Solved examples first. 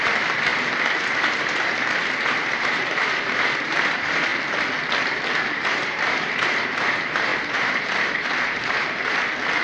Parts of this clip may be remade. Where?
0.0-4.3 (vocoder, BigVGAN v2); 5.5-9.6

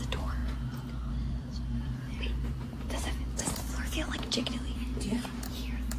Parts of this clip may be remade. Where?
0.0-0.4 (vocoder, BigVGAN v2); 1.1-6.0

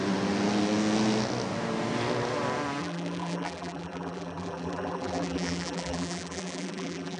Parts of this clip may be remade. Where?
2.8-7.2 (vocoder, BigVGAN v2)

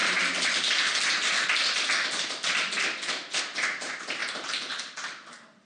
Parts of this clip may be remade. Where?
none